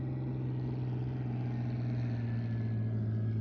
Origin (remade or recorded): recorded